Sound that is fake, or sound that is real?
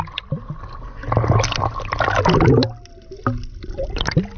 real